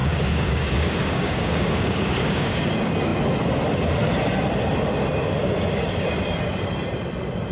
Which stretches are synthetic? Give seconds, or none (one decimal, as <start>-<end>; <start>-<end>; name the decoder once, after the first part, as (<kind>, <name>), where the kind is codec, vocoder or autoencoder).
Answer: 0.0-2.6 (codec, DAC)